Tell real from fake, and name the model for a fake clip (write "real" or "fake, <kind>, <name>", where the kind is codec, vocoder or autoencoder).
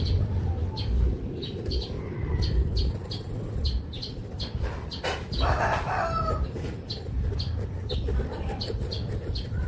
real